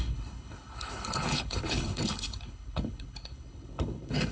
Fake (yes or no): yes